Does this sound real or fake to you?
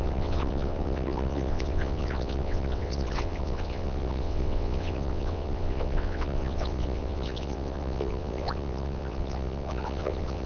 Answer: fake